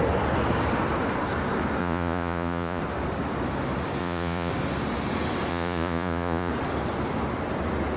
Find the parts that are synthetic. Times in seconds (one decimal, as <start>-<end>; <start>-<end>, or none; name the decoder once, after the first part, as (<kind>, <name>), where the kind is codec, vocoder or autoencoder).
1.8-2.8 (vocoder, Vocos); 4.0-4.5; 5.5-6.5